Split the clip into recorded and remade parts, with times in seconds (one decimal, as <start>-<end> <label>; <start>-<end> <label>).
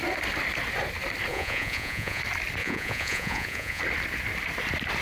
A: 0.0-1.3 recorded; 1.3-2.2 remade; 2.2-2.6 recorded; 2.6-3.8 remade; 3.8-5.0 recorded